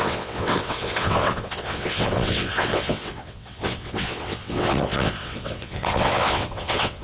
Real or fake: fake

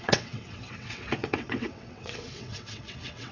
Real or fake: fake